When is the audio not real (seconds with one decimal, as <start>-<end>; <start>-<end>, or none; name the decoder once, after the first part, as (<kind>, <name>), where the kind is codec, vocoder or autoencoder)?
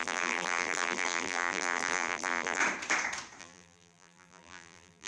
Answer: 0.0-2.6 (vocoder, BigVGAN v2); 3.4-5.1